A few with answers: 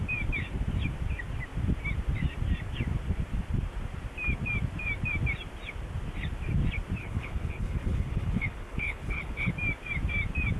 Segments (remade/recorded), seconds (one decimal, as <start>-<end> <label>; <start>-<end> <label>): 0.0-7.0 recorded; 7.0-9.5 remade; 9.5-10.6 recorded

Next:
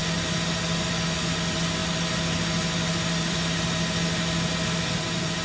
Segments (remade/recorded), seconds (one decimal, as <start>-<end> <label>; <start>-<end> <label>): 0.0-5.4 recorded

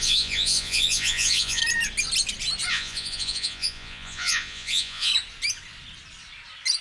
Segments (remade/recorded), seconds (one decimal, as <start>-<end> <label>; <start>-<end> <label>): 0.0-1.6 remade; 1.6-2.7 recorded; 2.7-5.1 remade; 5.1-6.8 recorded